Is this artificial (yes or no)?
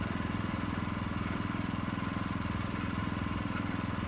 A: no